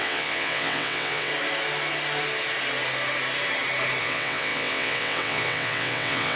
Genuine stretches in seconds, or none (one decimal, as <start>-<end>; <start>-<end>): 1.3-4.0